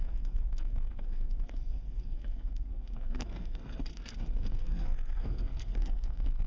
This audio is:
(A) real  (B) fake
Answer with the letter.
B